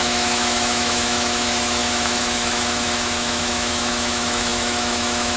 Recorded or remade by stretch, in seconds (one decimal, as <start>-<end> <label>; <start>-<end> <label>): 0.0-5.4 remade